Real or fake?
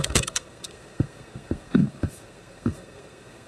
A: fake